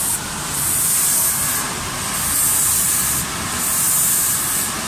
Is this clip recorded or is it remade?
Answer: recorded